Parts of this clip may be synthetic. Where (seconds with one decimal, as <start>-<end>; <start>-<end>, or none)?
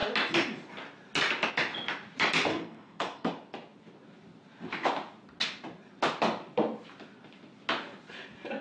2.5-3.3